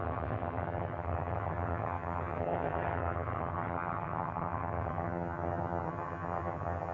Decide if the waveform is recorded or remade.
remade